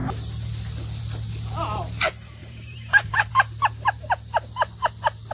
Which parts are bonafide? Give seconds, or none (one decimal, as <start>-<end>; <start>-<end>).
0.0-2.4; 3.3-5.3